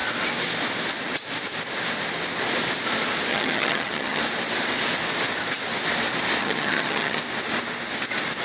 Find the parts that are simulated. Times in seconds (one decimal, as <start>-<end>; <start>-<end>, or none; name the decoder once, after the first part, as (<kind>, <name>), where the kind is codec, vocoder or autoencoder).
3.3-4.2 (vocoder, HiFi-GAN); 6.4-7.2